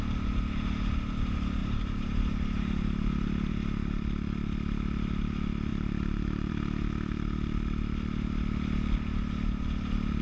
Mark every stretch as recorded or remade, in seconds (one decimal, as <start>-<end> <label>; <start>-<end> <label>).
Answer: 0.0-1.6 recorded; 1.6-3.5 remade; 3.5-5.7 recorded; 5.7-6.5 remade; 6.5-10.2 recorded